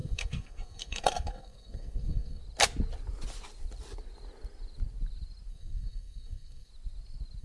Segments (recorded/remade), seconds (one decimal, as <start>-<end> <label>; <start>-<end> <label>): 0.0-2.4 remade; 2.4-5.5 recorded; 5.5-6.7 remade; 6.7-7.4 recorded